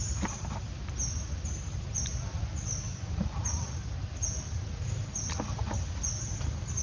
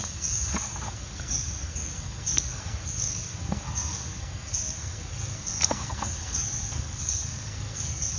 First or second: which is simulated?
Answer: second